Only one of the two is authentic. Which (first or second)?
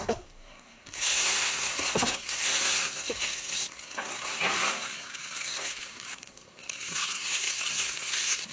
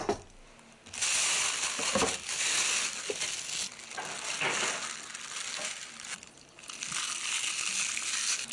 second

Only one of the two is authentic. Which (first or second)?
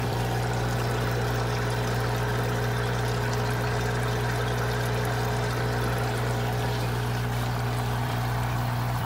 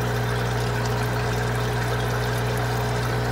second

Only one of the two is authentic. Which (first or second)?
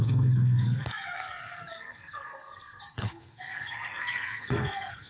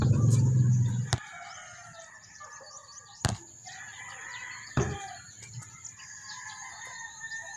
second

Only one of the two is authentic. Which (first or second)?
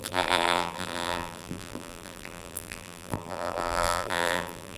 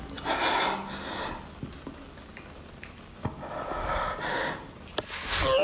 second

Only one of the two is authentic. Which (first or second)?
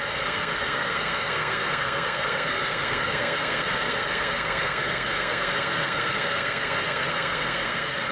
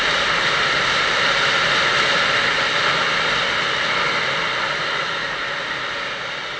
second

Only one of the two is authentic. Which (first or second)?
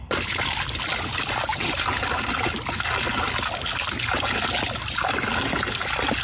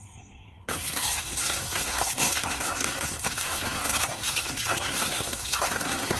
first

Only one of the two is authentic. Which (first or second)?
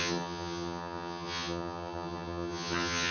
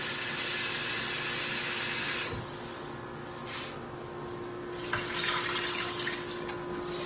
second